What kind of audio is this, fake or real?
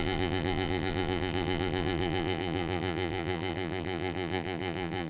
fake